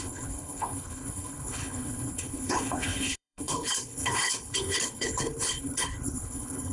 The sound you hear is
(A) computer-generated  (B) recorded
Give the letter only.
A